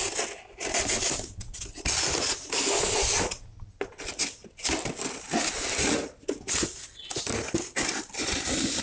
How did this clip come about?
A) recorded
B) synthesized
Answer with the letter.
A